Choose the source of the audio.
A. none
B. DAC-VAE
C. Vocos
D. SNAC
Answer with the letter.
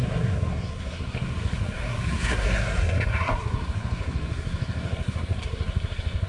D